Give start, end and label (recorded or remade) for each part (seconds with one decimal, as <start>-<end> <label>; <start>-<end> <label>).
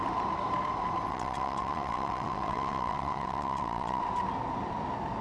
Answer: 0.0-1.1 recorded; 1.1-4.0 remade; 4.0-5.2 recorded